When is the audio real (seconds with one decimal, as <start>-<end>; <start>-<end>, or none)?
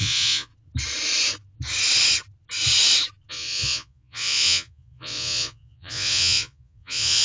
0.5-3.3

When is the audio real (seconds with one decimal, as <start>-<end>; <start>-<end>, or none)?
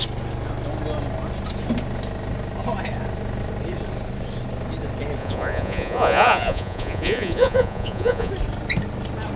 0.0-5.2; 8.3-9.4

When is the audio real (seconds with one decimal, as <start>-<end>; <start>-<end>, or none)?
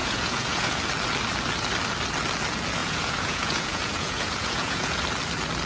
0.8-2.8; 5.0-5.7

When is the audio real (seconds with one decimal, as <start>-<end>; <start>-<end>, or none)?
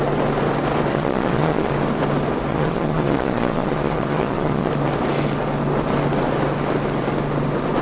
0.0-0.9; 1.7-2.5; 4.7-7.8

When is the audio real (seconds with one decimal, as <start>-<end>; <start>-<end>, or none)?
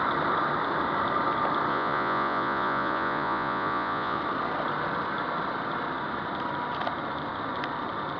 0.0-1.7; 4.2-8.2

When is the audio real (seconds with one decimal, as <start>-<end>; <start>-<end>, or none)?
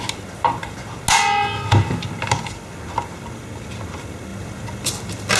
0.0-5.4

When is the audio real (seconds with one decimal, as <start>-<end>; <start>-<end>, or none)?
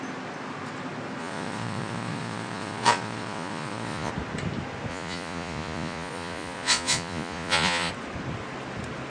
0.0-1.2; 4.1-4.9; 7.9-9.1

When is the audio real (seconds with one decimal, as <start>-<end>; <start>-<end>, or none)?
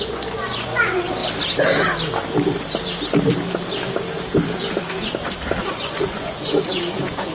1.2-5.6